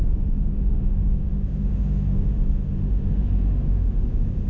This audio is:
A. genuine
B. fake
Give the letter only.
B